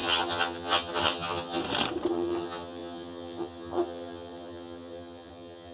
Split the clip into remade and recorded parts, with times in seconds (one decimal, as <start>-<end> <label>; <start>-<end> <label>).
0.0-1.6 remade; 1.6-2.1 recorded; 2.1-5.7 remade